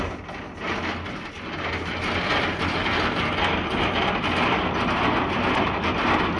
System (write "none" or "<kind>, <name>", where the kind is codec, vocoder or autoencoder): none